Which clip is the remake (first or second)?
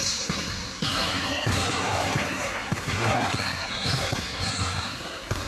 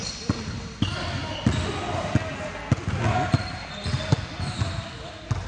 first